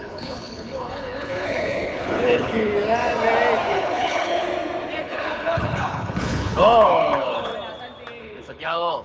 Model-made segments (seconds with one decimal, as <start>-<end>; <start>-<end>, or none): 0.0-2.7; 3.7-4.5; 5.0-7.5; 8.2-9.0